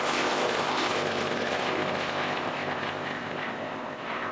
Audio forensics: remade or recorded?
remade